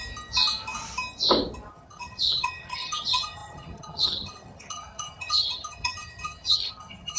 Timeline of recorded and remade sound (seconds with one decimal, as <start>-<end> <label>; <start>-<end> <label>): 0.0-1.7 recorded; 1.7-7.2 remade